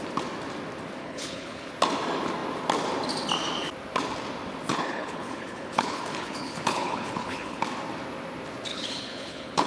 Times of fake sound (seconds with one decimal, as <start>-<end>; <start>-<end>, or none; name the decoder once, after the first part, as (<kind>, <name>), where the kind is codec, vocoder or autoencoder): 1.0-1.7 (codec, HILCodec); 4.7-7.6; 8.7-9.7